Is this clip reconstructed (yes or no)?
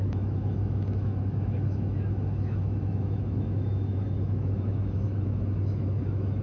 yes